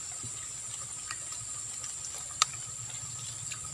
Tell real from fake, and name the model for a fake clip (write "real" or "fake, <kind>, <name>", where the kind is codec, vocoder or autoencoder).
real